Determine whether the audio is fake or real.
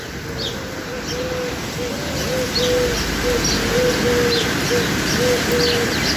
real